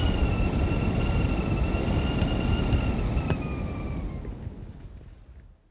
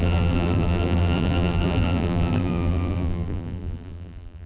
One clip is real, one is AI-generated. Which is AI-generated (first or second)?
second